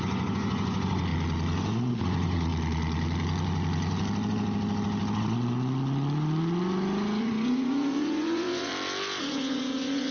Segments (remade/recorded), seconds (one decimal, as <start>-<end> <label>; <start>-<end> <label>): 0.0-1.1 remade; 1.1-1.9 recorded; 1.9-2.5 remade; 2.5-7.2 recorded; 7.2-8.7 remade; 8.7-9.2 recorded; 9.2-10.1 remade